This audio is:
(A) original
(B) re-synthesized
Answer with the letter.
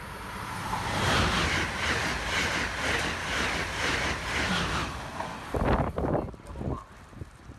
A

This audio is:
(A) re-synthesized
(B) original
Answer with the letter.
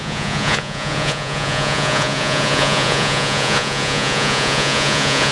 A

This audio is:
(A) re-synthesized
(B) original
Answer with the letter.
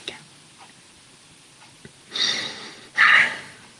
B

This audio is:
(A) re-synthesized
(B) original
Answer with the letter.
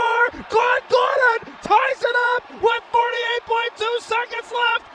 A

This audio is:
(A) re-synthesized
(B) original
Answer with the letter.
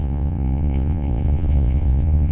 A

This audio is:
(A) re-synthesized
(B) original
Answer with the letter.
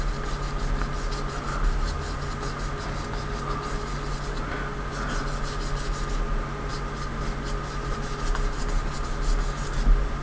B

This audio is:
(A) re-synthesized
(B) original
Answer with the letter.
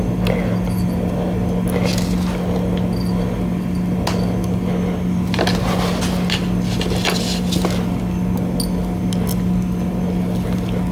B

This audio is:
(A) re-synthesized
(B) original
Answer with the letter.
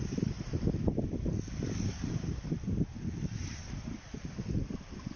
B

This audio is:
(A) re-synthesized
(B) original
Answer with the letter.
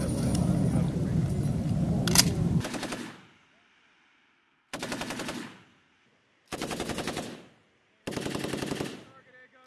B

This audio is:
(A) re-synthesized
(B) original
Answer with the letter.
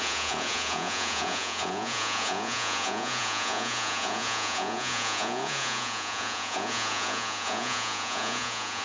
A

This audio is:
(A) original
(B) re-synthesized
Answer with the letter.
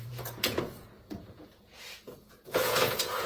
B